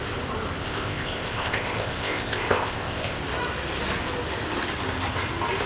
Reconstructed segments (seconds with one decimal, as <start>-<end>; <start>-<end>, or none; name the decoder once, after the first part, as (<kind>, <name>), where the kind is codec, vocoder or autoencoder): 0.6-3.2 (codec, ZipCodec)